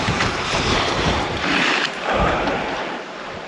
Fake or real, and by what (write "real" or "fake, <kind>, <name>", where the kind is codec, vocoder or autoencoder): fake, vocoder, BigVGAN v2